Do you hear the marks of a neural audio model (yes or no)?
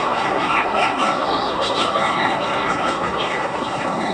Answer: yes